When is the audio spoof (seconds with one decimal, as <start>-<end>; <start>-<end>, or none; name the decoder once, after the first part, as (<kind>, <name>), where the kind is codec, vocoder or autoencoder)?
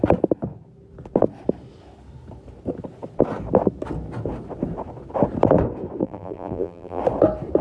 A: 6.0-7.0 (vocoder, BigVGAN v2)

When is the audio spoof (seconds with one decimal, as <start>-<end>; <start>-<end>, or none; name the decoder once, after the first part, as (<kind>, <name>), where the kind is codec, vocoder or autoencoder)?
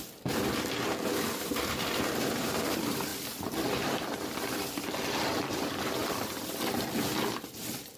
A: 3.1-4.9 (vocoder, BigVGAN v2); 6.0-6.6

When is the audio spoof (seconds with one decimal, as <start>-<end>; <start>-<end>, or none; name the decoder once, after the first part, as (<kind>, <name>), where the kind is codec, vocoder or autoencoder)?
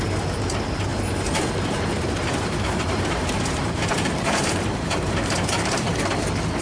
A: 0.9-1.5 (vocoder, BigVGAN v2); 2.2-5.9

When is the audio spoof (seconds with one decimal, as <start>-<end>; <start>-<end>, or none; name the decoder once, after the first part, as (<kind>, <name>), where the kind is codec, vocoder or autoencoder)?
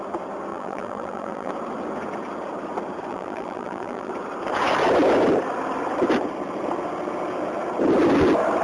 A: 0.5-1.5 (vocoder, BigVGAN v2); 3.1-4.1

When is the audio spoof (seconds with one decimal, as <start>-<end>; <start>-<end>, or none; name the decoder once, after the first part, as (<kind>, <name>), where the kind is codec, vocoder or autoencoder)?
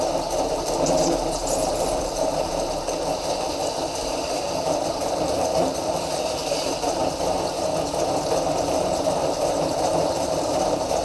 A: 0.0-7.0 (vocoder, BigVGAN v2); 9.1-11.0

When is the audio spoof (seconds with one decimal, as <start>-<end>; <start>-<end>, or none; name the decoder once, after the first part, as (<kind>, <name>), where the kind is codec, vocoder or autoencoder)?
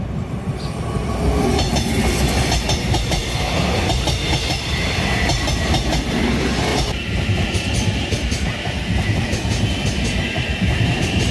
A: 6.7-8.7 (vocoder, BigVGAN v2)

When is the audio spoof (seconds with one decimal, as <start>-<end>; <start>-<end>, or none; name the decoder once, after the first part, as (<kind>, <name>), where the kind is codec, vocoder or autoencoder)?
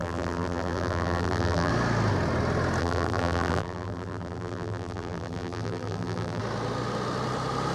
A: 0.0-1.7 (vocoder, BigVGAN v2); 2.8-6.4